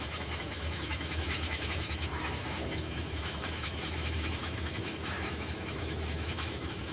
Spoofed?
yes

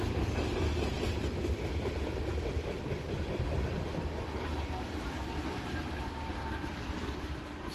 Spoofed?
no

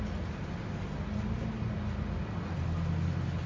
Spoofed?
no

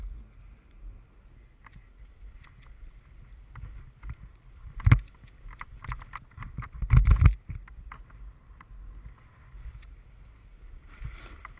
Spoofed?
no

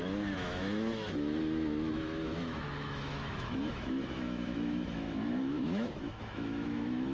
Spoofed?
yes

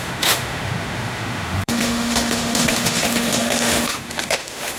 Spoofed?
yes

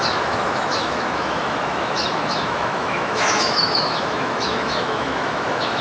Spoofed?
yes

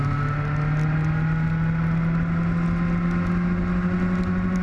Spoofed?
no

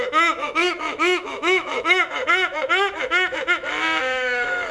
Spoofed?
yes